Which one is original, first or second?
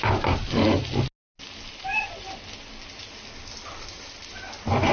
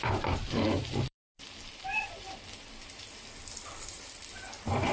first